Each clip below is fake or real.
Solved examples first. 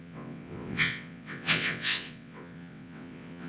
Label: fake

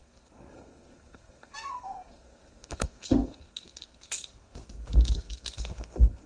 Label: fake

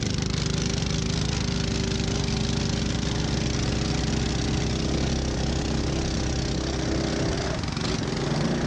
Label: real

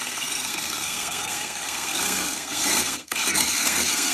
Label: fake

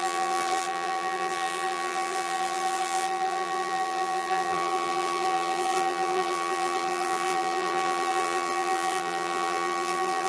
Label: fake